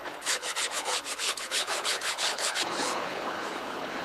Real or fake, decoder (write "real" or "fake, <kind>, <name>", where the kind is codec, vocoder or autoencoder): fake, codec, HILCodec